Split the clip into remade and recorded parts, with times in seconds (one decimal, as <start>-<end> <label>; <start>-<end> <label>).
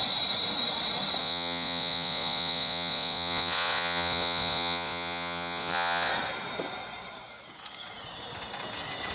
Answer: 0.0-1.2 recorded; 1.2-6.1 remade; 6.1-9.1 recorded